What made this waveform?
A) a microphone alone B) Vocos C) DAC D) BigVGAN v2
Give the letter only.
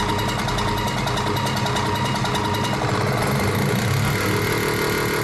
A